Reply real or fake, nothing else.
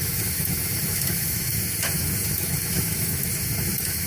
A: fake